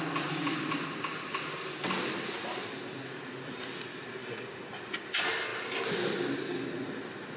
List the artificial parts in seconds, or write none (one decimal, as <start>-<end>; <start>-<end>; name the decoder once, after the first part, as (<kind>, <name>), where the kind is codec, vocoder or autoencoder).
4.2-4.7 (codec, DAC)